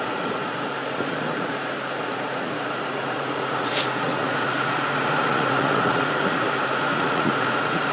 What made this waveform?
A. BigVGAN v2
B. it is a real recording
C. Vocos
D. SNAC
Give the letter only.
C